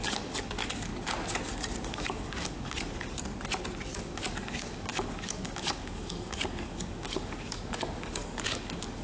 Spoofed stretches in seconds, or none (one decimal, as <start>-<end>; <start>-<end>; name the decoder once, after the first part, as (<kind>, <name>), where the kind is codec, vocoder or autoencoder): 0.0-0.9 (codec, DAC); 1.8-3.2; 4.0-9.0